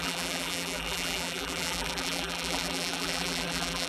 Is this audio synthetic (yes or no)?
yes